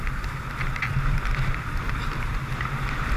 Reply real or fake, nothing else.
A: real